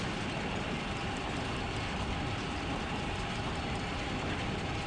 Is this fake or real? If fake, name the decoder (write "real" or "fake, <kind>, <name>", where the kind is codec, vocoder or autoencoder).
real